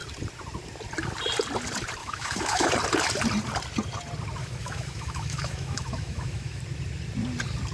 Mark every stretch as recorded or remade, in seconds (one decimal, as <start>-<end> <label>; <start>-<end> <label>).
0.0-2.0 recorded; 2.0-2.7 remade; 2.7-4.4 recorded; 4.4-6.6 remade; 6.6-7.7 recorded